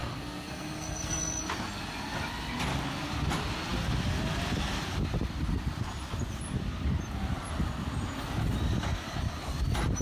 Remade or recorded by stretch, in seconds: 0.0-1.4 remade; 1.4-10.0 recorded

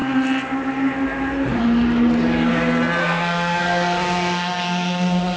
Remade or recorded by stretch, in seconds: 0.0-3.0 recorded; 3.0-5.4 remade

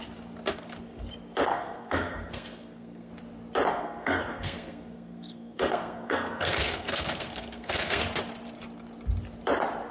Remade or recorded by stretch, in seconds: 0.0-0.5 recorded; 0.5-1.1 remade; 1.1-1.5 recorded; 1.5-3.1 remade; 3.1-3.7 recorded; 3.7-8.0 remade; 8.0-9.9 recorded

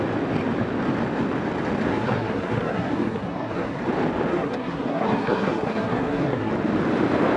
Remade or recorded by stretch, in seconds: 0.0-1.9 recorded; 1.9-3.8 remade; 3.8-4.3 recorded; 4.3-6.5 remade; 6.5-7.4 recorded

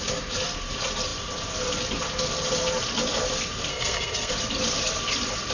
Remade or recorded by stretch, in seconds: 0.0-3.7 recorded; 3.7-4.3 remade; 4.3-5.5 recorded

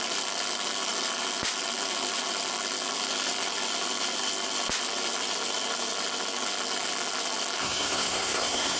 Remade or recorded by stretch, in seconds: 0.0-7.6 recorded; 7.6-8.8 remade